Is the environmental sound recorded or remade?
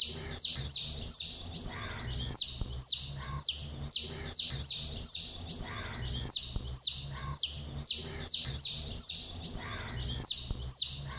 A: recorded